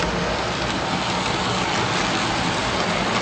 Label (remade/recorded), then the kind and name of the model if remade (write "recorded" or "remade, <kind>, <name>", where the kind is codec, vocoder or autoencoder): recorded